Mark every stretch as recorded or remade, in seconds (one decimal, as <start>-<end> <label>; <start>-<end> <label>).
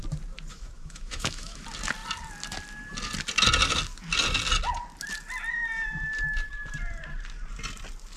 0.0-0.5 recorded; 0.5-1.6 remade; 1.6-8.2 recorded